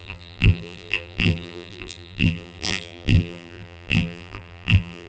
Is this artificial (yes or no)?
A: yes